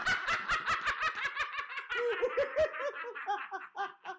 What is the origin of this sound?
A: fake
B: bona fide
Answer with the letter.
B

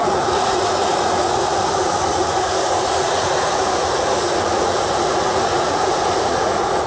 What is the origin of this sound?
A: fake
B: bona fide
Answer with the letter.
A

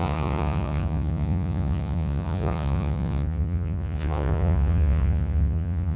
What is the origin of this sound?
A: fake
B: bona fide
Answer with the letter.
A